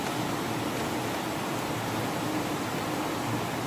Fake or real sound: real